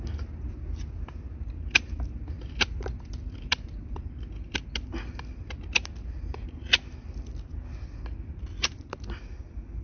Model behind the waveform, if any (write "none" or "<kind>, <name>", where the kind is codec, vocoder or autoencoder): none